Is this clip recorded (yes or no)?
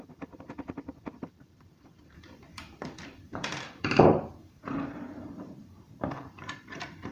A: no